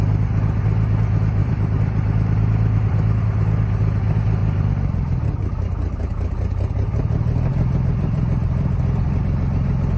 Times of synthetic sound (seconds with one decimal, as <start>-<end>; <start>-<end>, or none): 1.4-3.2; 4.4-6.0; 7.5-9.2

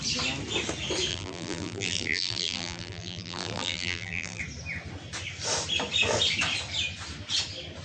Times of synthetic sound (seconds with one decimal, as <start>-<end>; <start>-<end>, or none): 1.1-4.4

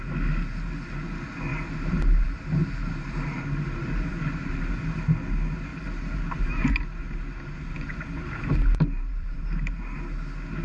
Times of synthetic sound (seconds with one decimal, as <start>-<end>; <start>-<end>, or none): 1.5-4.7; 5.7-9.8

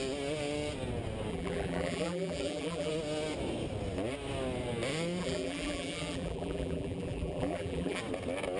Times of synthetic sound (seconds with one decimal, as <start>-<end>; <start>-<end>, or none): 1.3-2.9; 5.2-8.0

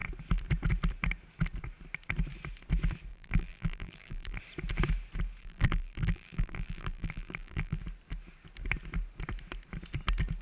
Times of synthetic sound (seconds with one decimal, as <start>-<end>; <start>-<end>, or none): 3.1-4.4; 5.4-7.8

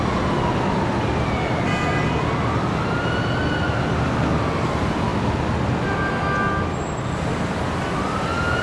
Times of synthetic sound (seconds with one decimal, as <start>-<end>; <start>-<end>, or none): none

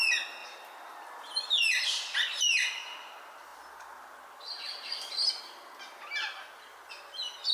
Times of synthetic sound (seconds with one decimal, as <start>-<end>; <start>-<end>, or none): 0.4-1.1

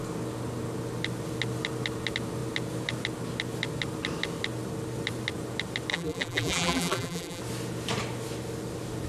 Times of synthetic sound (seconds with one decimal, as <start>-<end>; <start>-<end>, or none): 5.9-7.4